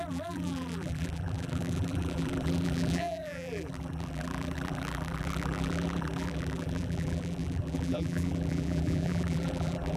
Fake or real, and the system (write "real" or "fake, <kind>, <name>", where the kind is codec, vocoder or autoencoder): fake, vocoder, BigVGAN v2